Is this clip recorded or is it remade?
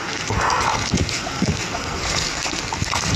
remade